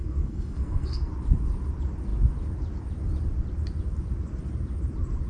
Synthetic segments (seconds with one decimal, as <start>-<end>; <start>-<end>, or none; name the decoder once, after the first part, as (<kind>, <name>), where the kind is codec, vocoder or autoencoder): 0.0-1.1 (codec, SNAC)